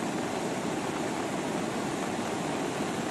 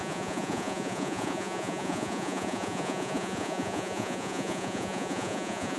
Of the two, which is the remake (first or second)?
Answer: second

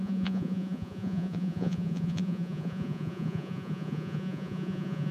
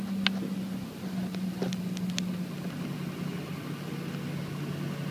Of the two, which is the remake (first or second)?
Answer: first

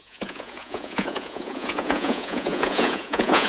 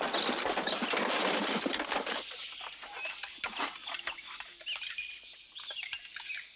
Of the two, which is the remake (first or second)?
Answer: first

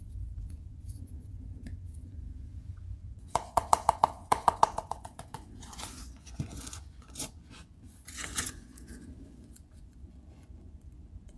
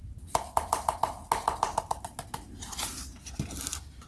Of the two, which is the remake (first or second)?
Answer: first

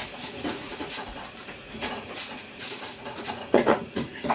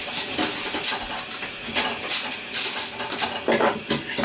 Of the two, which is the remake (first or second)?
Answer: first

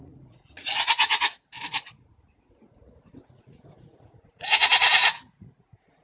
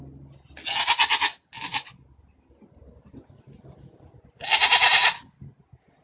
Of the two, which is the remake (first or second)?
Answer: first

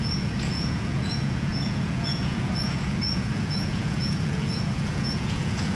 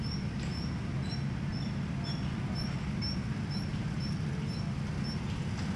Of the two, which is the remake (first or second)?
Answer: first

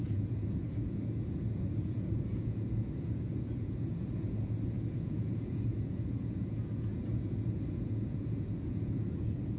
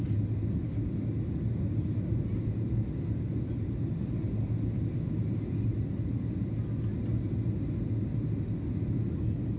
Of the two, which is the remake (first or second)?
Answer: first